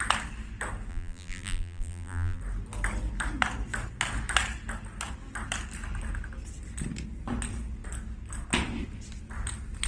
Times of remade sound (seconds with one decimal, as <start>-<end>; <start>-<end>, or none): 0.9-2.4